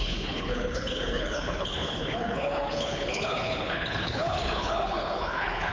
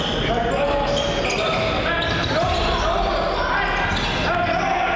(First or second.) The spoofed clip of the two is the first